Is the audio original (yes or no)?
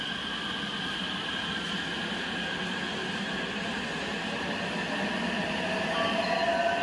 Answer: yes